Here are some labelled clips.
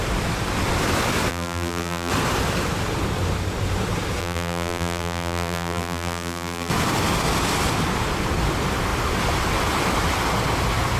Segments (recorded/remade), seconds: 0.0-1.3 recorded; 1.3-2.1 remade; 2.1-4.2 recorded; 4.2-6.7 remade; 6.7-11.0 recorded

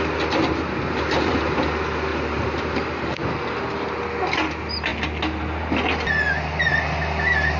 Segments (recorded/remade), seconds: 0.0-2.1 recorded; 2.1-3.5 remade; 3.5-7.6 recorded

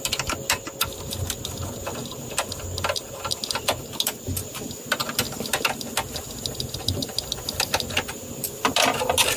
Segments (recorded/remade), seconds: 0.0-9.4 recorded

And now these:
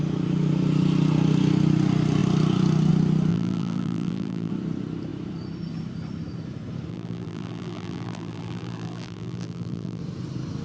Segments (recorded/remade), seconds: 0.0-3.3 recorded; 3.3-4.5 remade; 4.5-6.9 recorded; 6.9-10.0 remade; 10.0-10.6 recorded

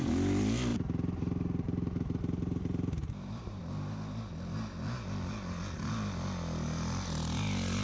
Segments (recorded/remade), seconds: 0.0-0.7 recorded; 0.7-3.6 remade; 3.6-7.8 recorded

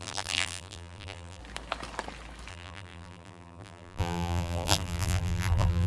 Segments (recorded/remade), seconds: 0.0-1.4 remade; 1.4-2.5 recorded; 2.5-5.9 remade